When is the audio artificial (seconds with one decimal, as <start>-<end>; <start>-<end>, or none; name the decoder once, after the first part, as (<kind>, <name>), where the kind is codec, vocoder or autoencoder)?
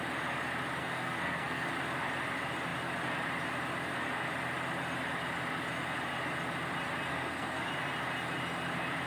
0.8-1.7 (codec, SNAC); 7.1-7.7